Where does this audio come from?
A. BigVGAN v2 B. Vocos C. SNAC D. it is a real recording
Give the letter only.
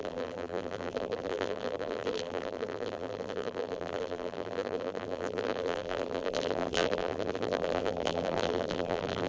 A